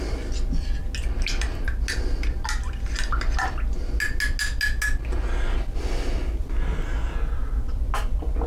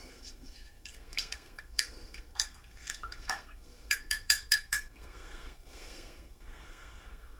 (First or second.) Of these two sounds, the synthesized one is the second